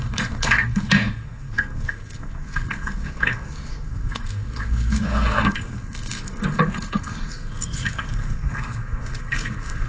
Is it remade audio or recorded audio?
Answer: remade